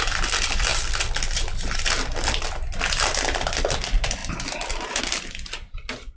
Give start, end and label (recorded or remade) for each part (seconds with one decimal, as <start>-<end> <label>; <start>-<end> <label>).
0.0-6.2 recorded